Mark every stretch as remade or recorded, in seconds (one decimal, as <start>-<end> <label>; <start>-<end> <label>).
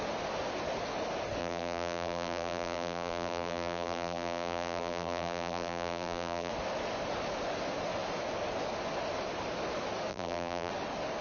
0.0-1.4 recorded; 1.4-6.5 remade; 6.5-10.1 recorded; 10.1-10.7 remade; 10.7-11.2 recorded